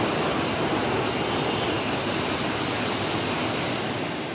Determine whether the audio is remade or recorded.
recorded